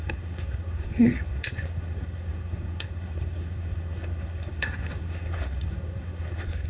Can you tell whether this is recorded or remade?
remade